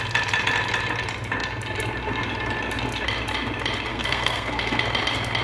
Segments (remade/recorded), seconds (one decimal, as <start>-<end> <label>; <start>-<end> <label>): 0.0-3.9 recorded; 3.9-4.8 remade; 4.8-5.4 recorded